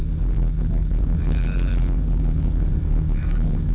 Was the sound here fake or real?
fake